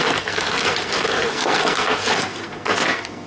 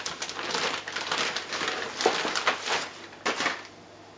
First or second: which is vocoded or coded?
first